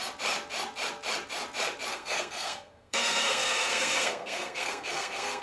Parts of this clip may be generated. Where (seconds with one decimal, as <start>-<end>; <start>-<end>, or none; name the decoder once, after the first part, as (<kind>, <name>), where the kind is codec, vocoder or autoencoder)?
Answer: 1.9-5.4 (codec, SNAC)